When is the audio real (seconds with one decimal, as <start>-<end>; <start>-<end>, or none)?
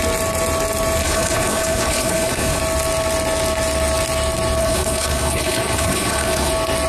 0.0-1.0; 2.6-4.6; 6.5-6.9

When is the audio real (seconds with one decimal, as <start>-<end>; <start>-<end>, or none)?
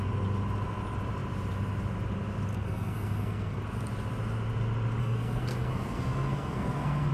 0.0-2.5; 3.6-5.0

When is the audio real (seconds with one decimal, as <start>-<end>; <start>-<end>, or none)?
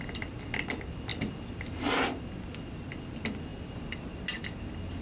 0.0-5.0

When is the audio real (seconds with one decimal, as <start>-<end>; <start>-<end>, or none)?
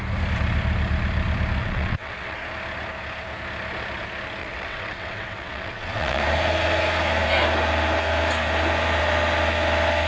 0.0-1.6; 2.4-4.4; 6.2-10.1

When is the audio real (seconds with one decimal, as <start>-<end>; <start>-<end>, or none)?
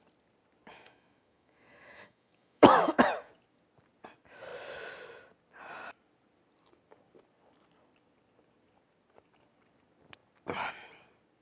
0.0-0.7; 3.3-11.4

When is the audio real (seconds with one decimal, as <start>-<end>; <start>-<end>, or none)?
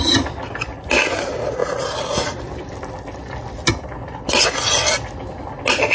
0.0-5.9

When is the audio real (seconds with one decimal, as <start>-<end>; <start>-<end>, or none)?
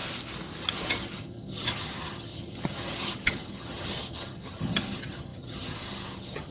0.0-0.7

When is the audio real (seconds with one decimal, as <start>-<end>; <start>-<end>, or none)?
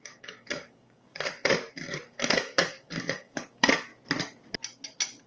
3.9-5.3